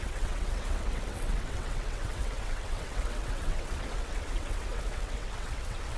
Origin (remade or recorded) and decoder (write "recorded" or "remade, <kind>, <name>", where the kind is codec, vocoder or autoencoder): remade, vocoder, WaveNeXt